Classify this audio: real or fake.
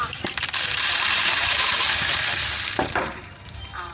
fake